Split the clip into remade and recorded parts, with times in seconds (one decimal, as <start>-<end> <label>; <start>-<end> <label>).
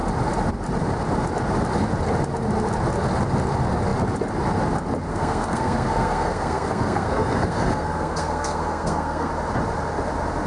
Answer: 0.0-5.1 recorded; 5.1-9.3 remade; 9.3-10.5 recorded